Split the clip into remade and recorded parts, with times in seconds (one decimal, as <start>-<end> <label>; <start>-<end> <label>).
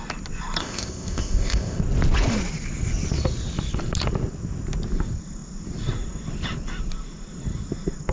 0.0-0.6 recorded; 0.6-1.8 remade; 1.8-8.1 recorded